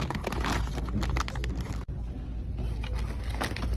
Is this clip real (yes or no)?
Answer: yes